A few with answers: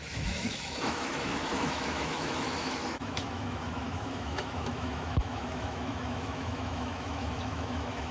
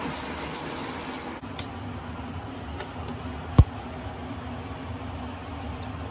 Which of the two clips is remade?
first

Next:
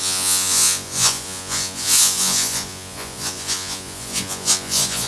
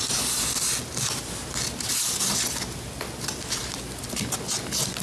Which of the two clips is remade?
first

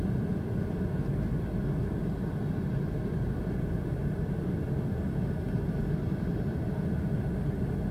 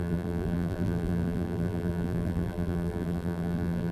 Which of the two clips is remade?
second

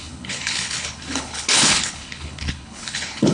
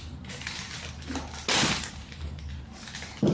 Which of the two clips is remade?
first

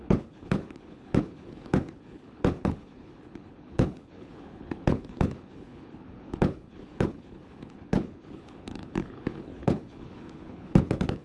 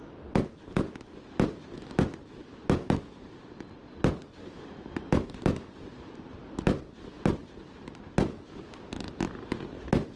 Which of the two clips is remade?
first